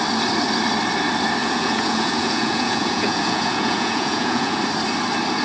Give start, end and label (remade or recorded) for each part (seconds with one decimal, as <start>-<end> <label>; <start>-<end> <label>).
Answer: 0.0-1.4 recorded; 1.4-4.6 remade; 4.6-5.4 recorded